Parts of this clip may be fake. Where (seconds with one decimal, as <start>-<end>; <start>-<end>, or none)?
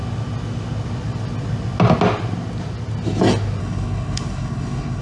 3.6-5.0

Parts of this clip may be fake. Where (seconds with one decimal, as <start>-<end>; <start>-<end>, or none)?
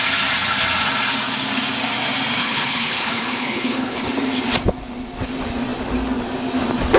2.4-4.1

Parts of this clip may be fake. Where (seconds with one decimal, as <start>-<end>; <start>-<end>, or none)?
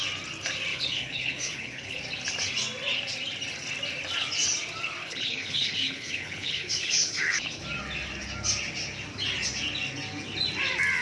0.7-2.0; 5.0-7.6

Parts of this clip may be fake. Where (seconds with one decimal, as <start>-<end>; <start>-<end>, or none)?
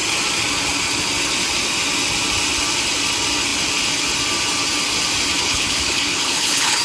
5.4-6.8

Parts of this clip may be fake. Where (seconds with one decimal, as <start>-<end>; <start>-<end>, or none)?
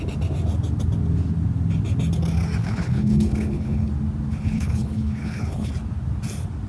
2.6-3.9; 4.3-5.7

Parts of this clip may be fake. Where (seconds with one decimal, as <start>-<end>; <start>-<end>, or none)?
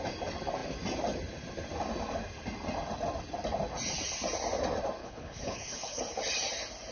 5.0-6.0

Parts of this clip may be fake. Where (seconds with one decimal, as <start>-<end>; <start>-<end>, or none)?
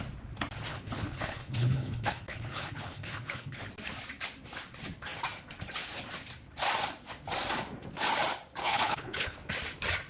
0.7-3.6; 8.6-9.5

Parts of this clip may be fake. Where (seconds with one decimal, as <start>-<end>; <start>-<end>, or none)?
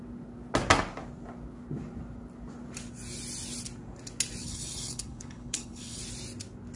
4.4-6.0